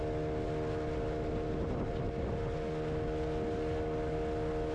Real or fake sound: real